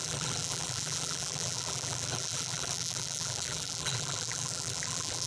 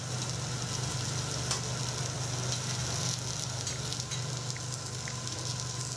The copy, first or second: first